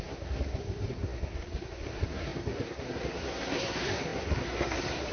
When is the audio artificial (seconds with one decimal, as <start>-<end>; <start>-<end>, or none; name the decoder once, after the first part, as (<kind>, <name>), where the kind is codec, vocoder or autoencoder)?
0.0-5.1 (codec, SNAC)